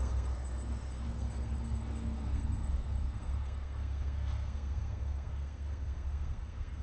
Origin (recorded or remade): remade